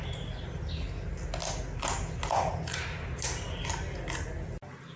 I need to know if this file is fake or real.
real